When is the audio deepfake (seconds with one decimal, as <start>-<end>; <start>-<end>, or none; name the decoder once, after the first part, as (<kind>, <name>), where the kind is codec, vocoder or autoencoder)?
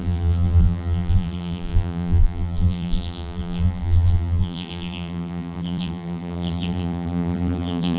0.0-8.0 (vocoder, BigVGAN v2)